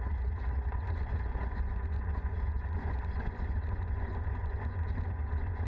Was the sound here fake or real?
fake